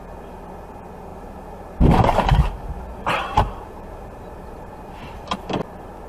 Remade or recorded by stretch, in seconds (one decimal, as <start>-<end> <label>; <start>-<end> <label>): 0.0-1.1 recorded; 1.1-4.7 remade; 4.7-6.1 recorded